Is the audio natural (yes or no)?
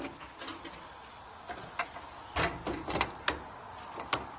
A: yes